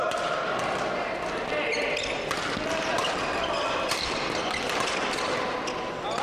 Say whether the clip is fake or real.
real